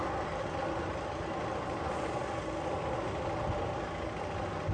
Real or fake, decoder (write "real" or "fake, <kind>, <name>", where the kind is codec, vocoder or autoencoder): real